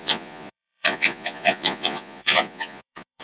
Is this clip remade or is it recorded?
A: remade